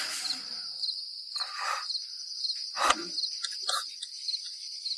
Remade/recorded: recorded